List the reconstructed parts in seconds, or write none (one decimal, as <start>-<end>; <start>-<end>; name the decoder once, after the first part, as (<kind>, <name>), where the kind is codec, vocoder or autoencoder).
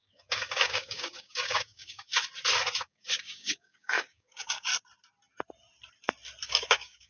0.0-2.1 (codec, DAC); 2.8-4.7; 6.5-7.1